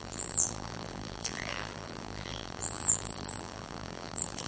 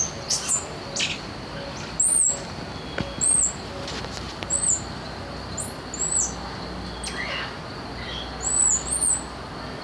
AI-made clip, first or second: first